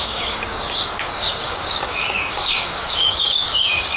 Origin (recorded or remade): remade